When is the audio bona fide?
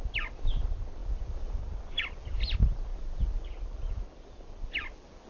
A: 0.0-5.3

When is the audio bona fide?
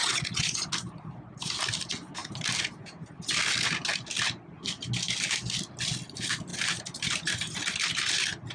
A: 0.7-8.5